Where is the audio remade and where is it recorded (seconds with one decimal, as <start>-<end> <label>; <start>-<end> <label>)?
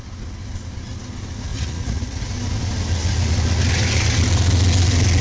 0.0-1.5 recorded; 1.5-2.3 remade; 2.3-5.2 recorded